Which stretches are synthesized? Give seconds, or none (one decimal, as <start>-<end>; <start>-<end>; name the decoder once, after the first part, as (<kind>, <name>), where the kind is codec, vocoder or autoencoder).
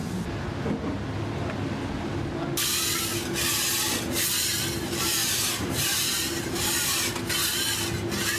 5.2-6.7 (vocoder, BigVGAN v2)